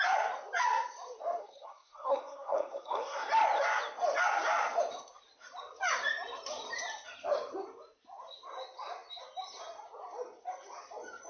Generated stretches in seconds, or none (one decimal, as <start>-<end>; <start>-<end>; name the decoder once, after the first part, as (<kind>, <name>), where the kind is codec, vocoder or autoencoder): 1.4-3.3 (codec, SNAC)